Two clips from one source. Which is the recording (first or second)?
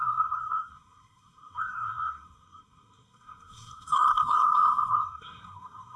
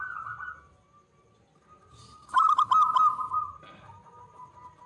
second